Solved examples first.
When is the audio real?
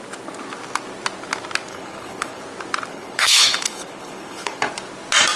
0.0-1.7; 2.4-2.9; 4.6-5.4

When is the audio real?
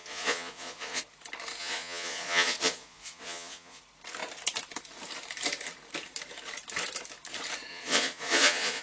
1.0-1.6; 3.8-7.7